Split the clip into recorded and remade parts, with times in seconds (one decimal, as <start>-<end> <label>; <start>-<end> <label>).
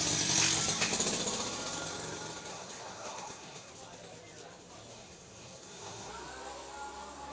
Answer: 0.0-2.5 recorded; 2.5-3.7 remade; 3.7-4.9 recorded; 4.9-6.1 remade; 6.1-7.3 recorded